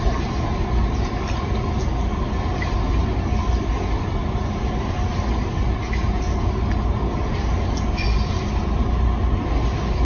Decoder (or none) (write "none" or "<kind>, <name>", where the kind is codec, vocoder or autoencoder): none